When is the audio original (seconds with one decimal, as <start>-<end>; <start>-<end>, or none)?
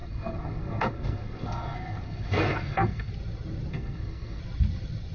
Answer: 3.1-3.7; 4.4-5.1